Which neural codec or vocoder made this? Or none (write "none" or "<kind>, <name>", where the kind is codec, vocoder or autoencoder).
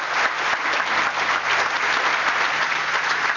none